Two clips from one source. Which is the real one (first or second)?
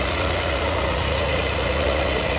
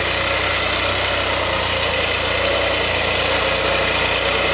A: second